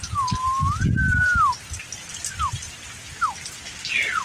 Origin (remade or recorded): recorded